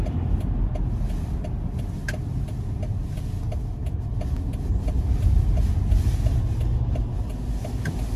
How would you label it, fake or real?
real